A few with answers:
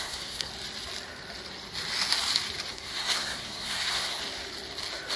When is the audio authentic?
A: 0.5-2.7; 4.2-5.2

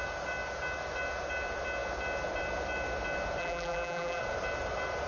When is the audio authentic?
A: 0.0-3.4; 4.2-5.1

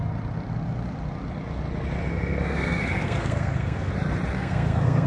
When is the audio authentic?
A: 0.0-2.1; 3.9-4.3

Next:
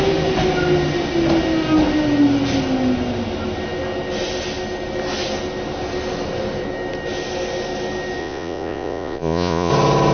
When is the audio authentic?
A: 0.0-8.2; 9.7-10.1